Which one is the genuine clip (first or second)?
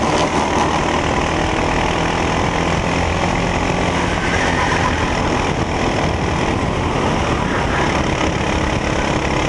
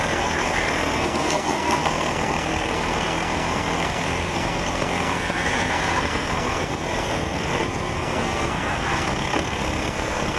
first